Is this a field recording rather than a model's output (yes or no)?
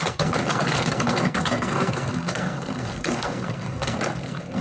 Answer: no